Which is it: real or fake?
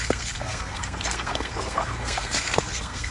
fake